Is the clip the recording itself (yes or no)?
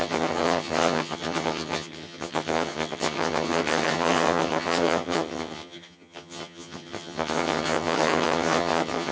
no